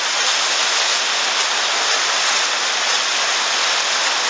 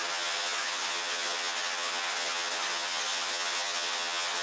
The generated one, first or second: second